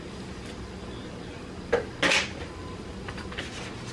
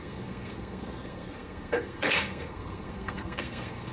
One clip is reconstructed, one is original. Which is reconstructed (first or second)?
second